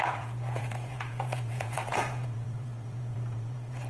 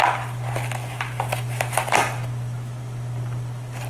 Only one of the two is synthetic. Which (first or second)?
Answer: first